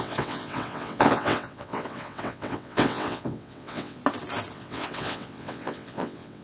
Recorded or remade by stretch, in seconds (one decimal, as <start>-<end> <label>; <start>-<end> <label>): 0.0-4.0 remade; 4.0-4.5 recorded; 4.5-6.4 remade